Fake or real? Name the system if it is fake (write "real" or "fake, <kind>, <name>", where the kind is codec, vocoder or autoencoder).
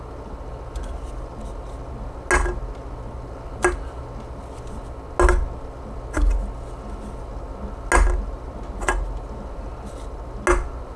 real